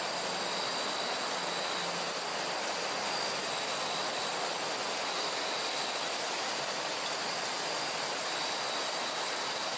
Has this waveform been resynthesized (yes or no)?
no